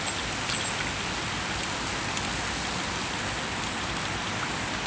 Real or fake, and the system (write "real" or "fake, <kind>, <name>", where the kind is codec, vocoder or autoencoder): real